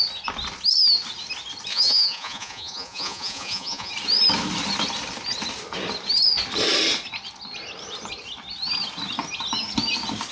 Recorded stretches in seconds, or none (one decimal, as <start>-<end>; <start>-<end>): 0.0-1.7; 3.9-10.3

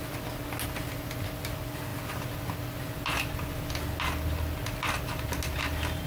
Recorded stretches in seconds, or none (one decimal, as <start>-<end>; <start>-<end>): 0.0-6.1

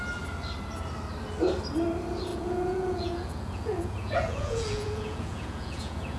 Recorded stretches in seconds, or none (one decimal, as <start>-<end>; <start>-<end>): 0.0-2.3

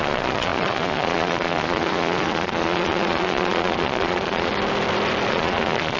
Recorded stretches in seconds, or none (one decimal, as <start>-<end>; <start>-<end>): 4.5-5.3